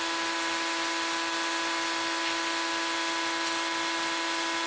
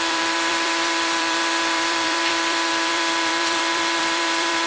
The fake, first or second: second